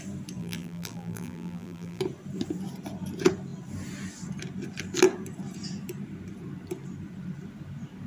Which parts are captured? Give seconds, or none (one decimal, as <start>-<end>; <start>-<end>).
0.0-0.4; 2.0-8.1